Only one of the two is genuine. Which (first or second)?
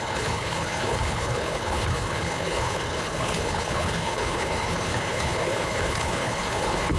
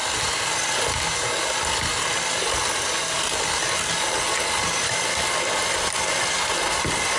second